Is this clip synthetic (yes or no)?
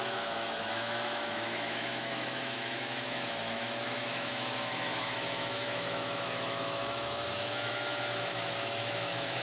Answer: yes